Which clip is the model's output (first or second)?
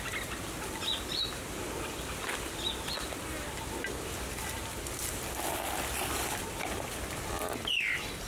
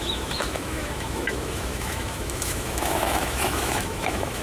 second